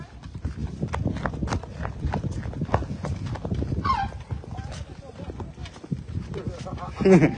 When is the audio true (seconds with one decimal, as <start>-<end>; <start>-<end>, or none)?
0.0-7.4